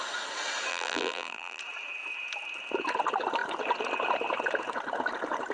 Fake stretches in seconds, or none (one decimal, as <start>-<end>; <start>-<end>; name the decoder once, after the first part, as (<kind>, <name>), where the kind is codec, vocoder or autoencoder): 0.7-1.6 (vocoder, BigVGAN v2)